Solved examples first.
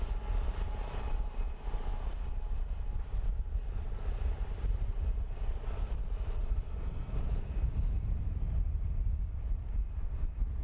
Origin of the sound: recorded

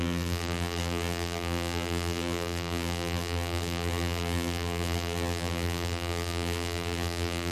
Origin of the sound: remade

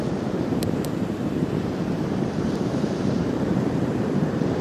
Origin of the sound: remade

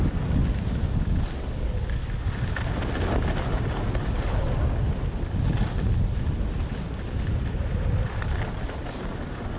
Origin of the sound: recorded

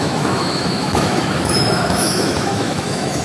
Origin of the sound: remade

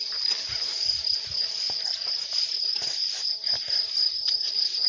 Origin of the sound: recorded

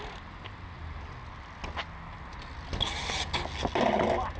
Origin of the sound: recorded